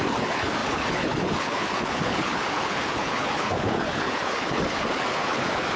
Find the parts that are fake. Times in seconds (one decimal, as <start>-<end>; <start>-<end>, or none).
0.0-5.8